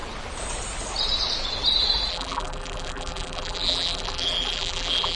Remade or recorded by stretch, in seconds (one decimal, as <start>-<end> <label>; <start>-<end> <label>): 0.0-2.1 recorded; 2.1-5.1 remade